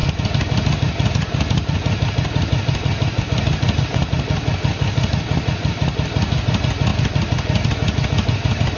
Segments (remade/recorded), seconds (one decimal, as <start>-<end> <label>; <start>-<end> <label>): 0.0-8.8 recorded